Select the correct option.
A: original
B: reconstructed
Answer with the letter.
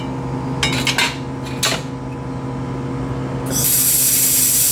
A